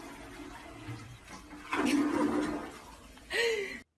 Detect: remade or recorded recorded